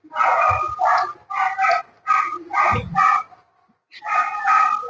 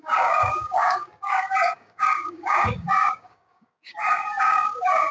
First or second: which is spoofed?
second